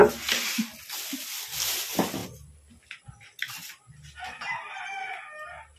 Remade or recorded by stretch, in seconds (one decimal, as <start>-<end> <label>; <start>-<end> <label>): 0.0-5.8 recorded